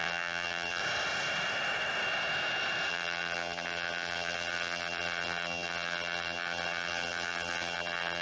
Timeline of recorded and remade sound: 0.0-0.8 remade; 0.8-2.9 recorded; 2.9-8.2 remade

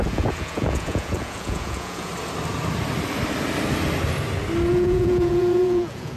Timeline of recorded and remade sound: 0.0-2.1 remade; 2.1-4.7 recorded; 4.7-6.2 remade

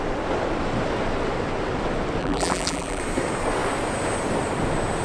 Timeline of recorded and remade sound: 0.0-2.2 recorded; 2.2-3.0 remade; 3.0-5.0 recorded

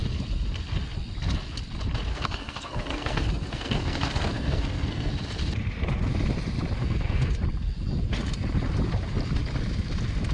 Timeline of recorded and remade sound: 0.0-2.1 recorded; 2.1-5.1 remade; 5.1-6.8 recorded; 6.8-7.3 remade; 7.3-10.3 recorded

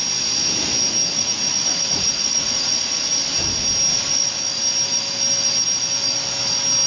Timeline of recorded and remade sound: 0.0-1.1 recorded; 1.1-3.0 remade; 3.0-3.9 recorded; 3.9-4.4 remade; 4.4-6.9 recorded

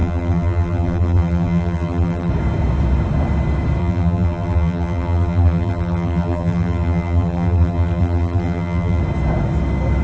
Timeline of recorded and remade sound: 0.0-2.3 remade; 2.3-3.8 recorded; 3.8-9.0 remade; 9.0-10.0 recorded